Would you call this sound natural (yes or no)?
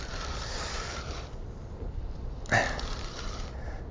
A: yes